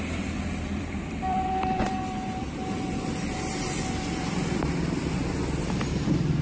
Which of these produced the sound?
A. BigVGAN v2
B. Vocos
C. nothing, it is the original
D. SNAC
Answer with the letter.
A